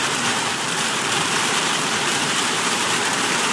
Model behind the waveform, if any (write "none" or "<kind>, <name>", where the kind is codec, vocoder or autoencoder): vocoder, BigVGAN v2